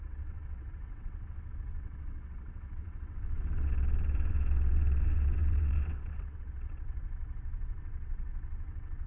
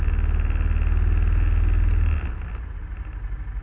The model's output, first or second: first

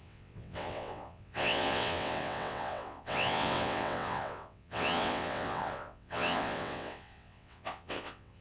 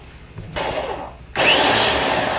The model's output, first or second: first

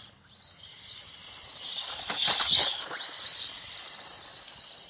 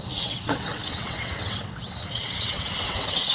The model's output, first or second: second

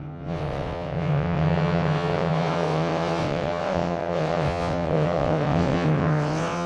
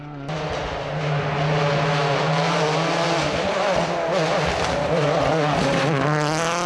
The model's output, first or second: first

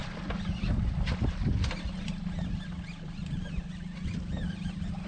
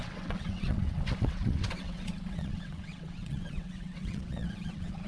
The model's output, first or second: second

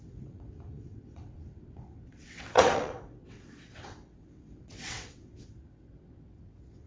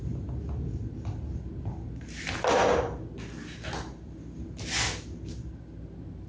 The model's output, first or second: first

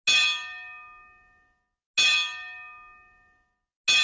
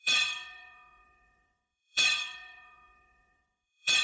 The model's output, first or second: second